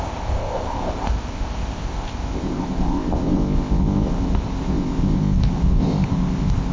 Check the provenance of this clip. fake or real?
fake